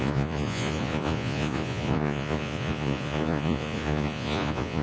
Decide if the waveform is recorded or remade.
remade